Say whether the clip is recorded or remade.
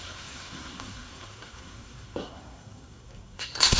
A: remade